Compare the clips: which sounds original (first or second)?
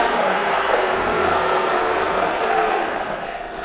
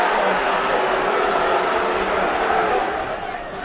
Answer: second